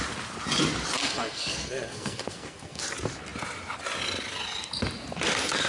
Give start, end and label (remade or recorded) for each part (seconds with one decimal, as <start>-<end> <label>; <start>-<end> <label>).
0.0-1.0 recorded; 1.0-2.8 remade; 2.8-5.7 recorded